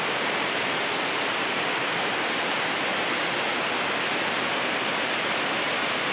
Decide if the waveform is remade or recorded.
recorded